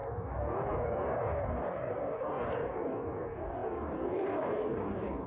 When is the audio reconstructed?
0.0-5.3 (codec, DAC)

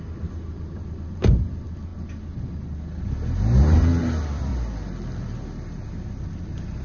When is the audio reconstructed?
0.0-1.9 (vocoder, BigVGAN v2); 4.0-4.5

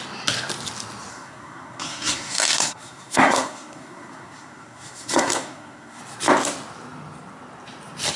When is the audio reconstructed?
1.1-6.0 (codec, SNAC)

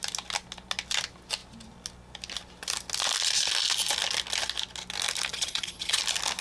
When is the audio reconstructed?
5.3-6.0 (vocoder, Vocos)

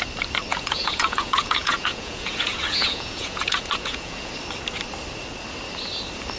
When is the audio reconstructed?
0.5-4.3 (vocoder, Vocos)

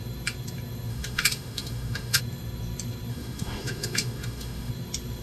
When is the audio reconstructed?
0.9-2.2 (autoencoder, DAC-VAE); 3.1-4.7

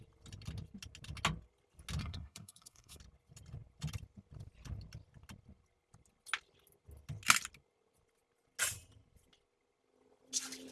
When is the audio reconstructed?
2.0-3.0 (codec, SNAC)

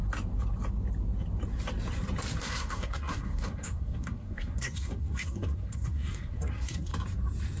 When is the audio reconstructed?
2.4-6.9 (codec, SNAC)